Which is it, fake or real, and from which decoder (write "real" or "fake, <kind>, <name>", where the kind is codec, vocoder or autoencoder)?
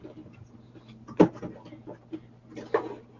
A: real